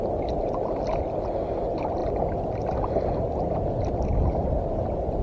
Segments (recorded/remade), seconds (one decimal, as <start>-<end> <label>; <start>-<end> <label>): 0.0-5.2 recorded